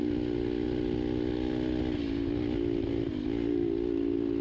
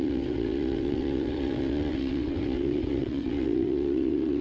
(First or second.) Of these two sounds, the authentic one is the first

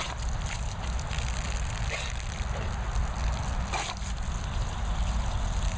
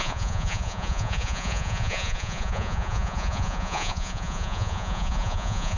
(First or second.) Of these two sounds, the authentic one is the first